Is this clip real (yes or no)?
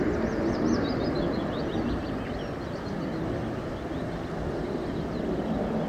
yes